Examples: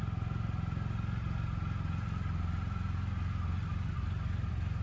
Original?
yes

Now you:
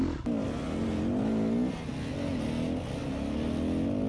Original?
yes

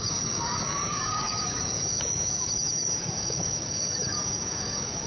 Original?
no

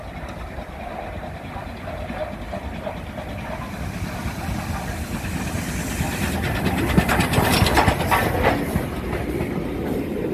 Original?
yes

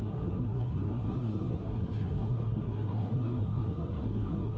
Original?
no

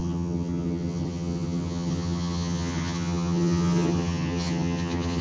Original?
no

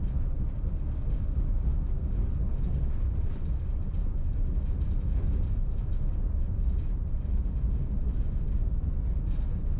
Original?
yes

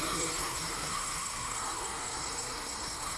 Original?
no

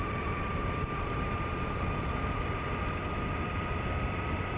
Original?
yes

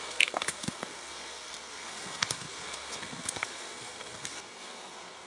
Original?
no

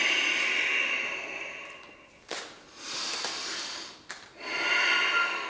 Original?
yes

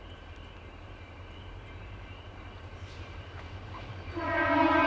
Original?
no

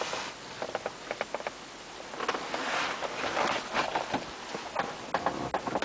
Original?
yes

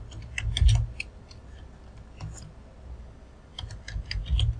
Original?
yes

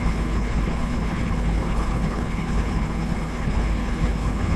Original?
no